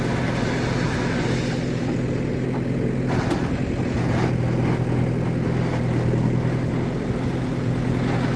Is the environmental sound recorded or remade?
recorded